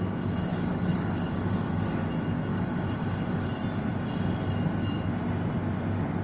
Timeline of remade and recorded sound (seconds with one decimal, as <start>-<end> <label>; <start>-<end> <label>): 0.0-0.5 recorded; 0.5-2.1 remade; 2.1-2.5 recorded; 2.5-3.6 remade; 3.6-6.2 recorded